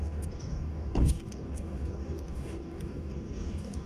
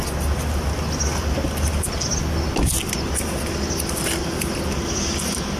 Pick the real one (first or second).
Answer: second